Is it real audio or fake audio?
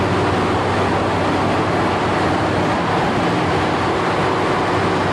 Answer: real